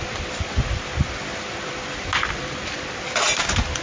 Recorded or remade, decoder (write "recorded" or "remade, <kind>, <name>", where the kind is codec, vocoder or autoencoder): recorded